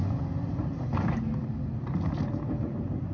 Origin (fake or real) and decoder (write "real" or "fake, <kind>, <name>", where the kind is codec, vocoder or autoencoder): real